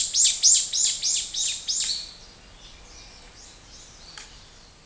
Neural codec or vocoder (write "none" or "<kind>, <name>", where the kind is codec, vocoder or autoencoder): none